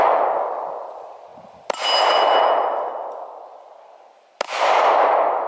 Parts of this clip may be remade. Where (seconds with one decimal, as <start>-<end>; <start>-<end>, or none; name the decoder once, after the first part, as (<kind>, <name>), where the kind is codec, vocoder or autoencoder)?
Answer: none